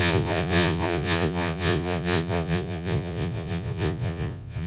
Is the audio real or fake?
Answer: fake